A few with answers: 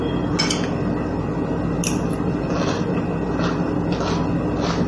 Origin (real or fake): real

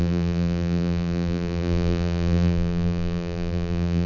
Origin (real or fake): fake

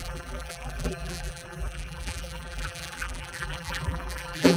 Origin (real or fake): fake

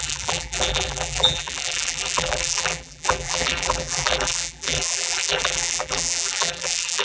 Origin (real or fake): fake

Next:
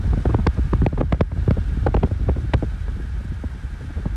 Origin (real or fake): real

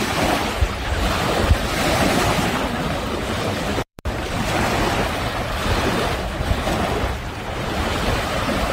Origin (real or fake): fake